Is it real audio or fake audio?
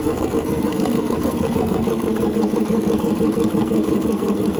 fake